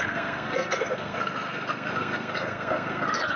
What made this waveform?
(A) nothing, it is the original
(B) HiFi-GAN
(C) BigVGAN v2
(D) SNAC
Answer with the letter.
D